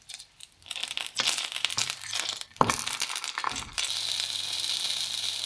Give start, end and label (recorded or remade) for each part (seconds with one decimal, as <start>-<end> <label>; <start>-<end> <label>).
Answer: 0.0-5.5 remade